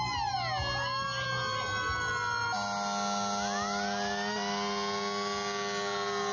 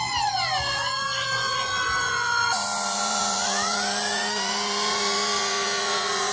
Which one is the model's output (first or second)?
second